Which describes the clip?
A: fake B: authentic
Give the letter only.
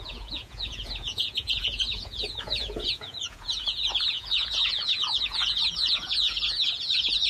A